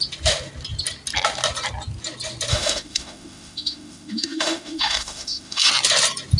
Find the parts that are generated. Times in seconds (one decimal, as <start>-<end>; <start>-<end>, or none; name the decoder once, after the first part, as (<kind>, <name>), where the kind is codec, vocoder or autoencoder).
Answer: 2.5-5.7 (autoencoder, DAC-VAE)